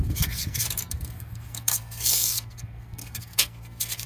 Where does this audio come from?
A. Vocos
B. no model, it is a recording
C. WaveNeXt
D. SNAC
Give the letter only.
D